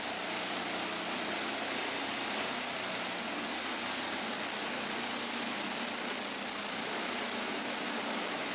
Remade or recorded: recorded